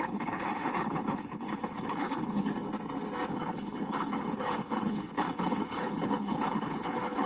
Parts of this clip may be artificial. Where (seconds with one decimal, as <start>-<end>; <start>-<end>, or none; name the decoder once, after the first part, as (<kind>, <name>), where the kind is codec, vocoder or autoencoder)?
0.0-2.5 (codec, HILCodec); 3.3-7.3